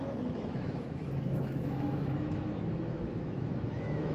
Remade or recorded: remade